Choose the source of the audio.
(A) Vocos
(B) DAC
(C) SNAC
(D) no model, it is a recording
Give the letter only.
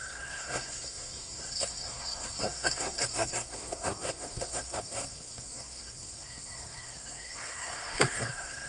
C